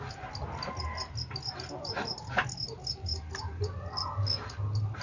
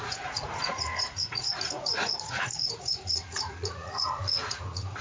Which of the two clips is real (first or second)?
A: first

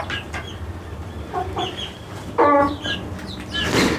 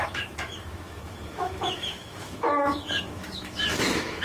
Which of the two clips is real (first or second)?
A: first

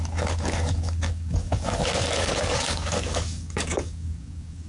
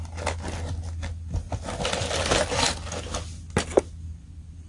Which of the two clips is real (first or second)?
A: second